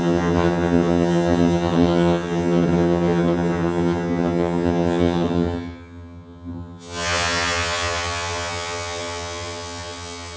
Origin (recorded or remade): remade